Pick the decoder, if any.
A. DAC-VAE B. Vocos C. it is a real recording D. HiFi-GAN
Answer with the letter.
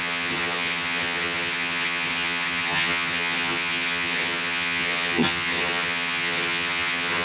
D